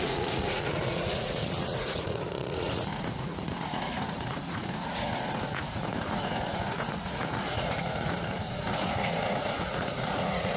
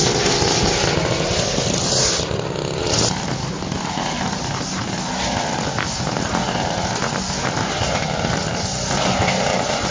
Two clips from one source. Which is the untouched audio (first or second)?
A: second